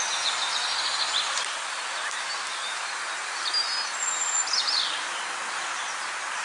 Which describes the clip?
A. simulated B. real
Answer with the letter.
B